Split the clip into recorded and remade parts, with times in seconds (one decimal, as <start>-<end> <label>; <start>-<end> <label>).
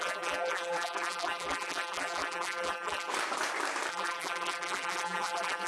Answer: 0.0-3.1 remade; 3.1-3.9 recorded; 3.9-5.7 remade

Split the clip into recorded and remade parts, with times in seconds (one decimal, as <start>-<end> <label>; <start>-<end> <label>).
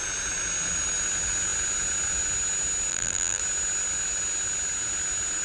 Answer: 0.0-2.9 recorded; 2.9-3.4 remade; 3.4-5.4 recorded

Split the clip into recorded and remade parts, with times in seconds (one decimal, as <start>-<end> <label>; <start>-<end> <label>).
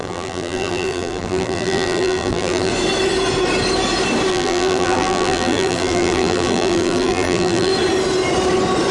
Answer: 0.0-2.7 remade; 2.7-4.3 recorded; 4.3-7.7 remade; 7.7-8.9 recorded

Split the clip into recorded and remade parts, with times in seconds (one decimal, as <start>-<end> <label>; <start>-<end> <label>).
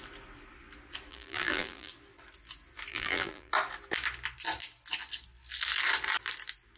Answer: 0.0-1.1 recorded; 1.1-1.9 remade; 1.9-2.9 recorded; 2.9-3.5 remade; 3.5-6.8 recorded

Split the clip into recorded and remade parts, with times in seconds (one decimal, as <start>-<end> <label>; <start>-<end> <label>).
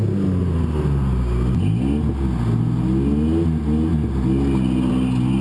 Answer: 0.0-5.4 recorded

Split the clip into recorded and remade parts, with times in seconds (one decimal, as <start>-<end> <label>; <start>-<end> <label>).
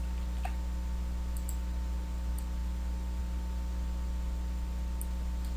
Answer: 0.0-5.6 recorded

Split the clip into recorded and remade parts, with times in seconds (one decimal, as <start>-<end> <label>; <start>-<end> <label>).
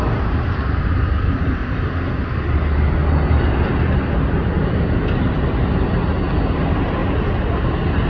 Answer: 0.0-1.6 remade; 1.6-6.5 recorded; 6.5-7.0 remade; 7.0-8.1 recorded